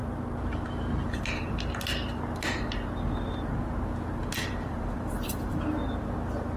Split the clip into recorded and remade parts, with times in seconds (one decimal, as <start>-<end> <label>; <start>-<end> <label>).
0.0-4.2 recorded; 4.2-5.6 remade; 5.6-6.6 recorded